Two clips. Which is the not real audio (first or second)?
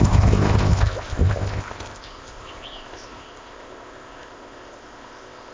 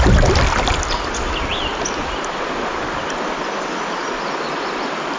first